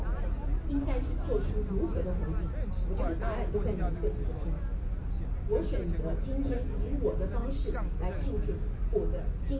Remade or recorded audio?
recorded